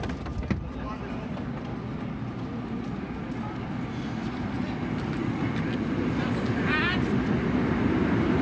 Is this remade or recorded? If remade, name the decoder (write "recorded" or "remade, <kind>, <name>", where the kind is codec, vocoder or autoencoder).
recorded